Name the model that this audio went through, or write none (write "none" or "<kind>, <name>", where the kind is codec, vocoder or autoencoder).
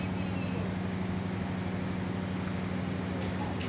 none